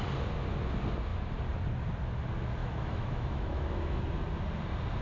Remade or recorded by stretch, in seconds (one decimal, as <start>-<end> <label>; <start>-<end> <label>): 0.0-2.6 recorded; 2.6-4.0 remade; 4.0-5.0 recorded